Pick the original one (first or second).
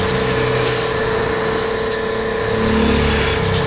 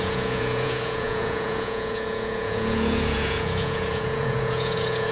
first